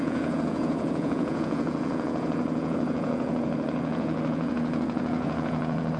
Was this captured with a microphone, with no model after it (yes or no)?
no